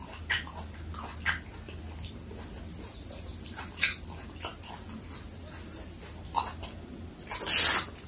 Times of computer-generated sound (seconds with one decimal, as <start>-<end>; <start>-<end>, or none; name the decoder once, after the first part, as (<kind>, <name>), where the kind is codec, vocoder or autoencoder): none